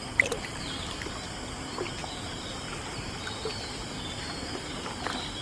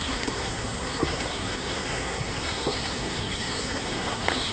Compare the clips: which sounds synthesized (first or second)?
second